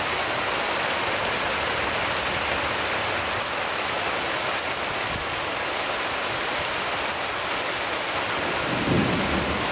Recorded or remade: recorded